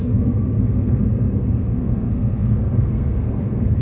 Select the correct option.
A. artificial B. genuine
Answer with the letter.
A